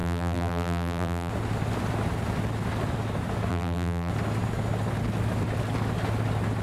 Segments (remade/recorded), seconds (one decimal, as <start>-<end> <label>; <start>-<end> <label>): 0.0-1.3 remade; 1.3-3.5 recorded; 3.5-4.1 remade; 4.1-6.6 recorded